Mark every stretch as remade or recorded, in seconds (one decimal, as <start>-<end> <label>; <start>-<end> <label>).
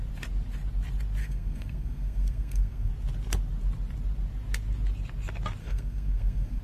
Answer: 0.0-1.2 recorded; 1.2-2.9 remade; 2.9-5.6 recorded; 5.6-6.6 remade